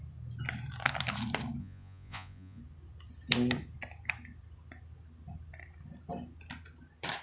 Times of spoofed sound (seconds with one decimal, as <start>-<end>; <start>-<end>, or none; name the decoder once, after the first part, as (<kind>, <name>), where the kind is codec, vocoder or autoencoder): 1.6-2.6 (vocoder, Vocos)